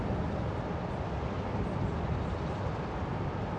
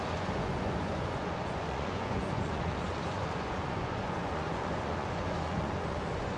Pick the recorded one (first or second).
first